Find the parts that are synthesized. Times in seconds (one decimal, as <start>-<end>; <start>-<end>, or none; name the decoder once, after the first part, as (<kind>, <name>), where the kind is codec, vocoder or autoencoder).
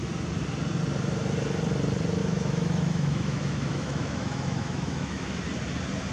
2.2-5.3 (autoencoder, DAC-VAE)